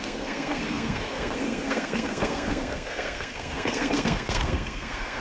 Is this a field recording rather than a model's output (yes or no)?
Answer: no